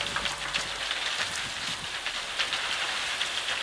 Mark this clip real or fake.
fake